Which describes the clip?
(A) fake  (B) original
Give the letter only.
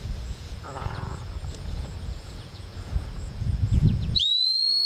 A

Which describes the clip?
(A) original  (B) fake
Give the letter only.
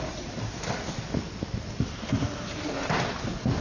A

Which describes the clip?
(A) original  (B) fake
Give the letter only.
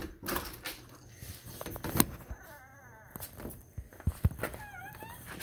A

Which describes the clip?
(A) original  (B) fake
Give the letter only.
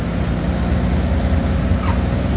A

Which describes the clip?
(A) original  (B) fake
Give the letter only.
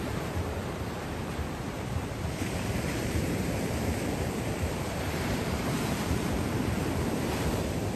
B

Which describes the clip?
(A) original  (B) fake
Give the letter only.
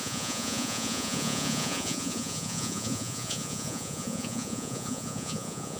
B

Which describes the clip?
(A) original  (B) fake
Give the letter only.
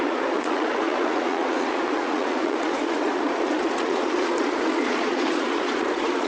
B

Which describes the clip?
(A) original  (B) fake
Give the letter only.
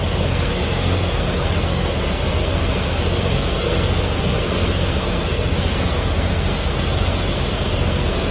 B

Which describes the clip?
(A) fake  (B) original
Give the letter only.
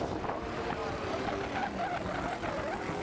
B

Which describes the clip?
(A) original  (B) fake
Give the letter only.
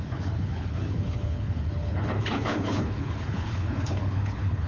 B